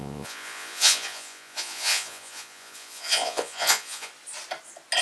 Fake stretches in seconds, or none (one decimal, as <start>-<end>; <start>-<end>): 0.0-4.1